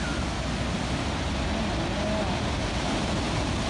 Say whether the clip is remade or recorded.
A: recorded